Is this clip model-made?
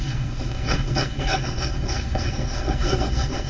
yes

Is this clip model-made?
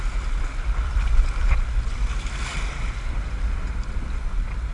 no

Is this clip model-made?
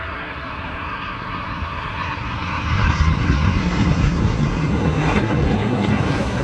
yes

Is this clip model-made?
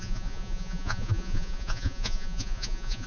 yes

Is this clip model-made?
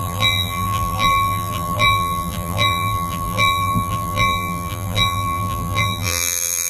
yes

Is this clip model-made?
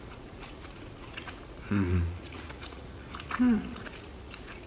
yes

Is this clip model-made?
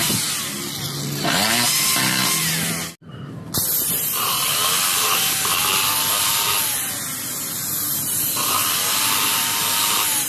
no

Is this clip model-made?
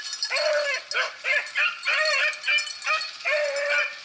no